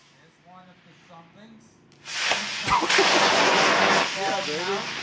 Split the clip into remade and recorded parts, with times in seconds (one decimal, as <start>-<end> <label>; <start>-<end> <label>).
0.0-2.1 recorded; 2.1-3.9 remade; 3.9-5.0 recorded